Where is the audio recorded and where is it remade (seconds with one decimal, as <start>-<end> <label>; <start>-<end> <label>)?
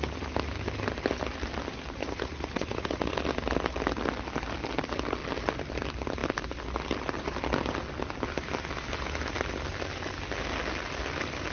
0.0-2.0 recorded; 2.0-3.1 remade; 3.1-11.5 recorded